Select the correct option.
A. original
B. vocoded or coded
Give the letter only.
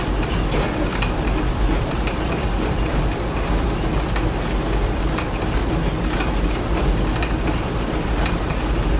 A